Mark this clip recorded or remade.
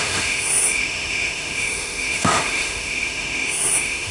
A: remade